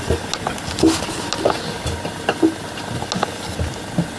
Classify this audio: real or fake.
real